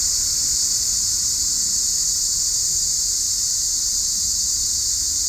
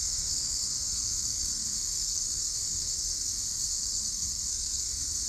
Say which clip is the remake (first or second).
second